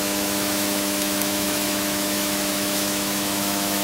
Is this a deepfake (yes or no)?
yes